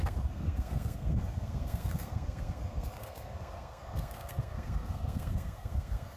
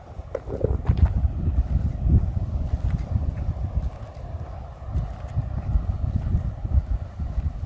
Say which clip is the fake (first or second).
first